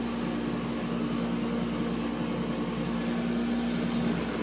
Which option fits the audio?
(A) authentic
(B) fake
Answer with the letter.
A